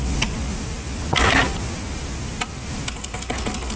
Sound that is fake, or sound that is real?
real